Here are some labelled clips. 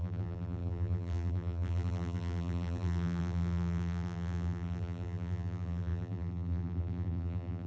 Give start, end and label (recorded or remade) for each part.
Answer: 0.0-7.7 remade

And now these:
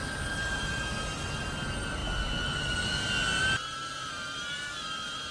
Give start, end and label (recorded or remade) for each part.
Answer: 0.0-5.3 recorded

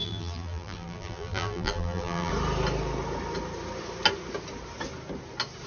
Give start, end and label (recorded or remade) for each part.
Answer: 0.0-2.3 remade; 2.3-5.7 recorded

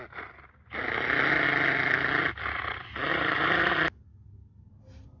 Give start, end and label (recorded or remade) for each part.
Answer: 0.0-3.1 recorded; 3.1-3.7 remade; 3.7-5.2 recorded

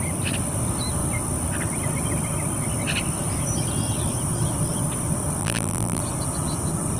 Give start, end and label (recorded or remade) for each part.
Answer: 0.0-5.4 recorded; 5.4-6.0 remade; 6.0-7.0 recorded